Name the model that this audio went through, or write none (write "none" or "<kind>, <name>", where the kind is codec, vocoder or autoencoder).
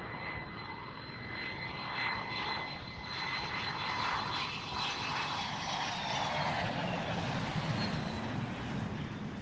none